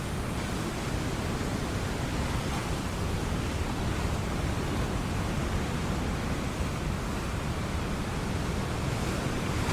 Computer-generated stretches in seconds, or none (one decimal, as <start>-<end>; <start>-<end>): none